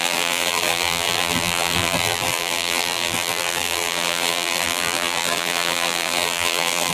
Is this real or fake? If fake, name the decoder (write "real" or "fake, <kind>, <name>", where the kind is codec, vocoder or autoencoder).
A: fake, vocoder, BigVGAN v2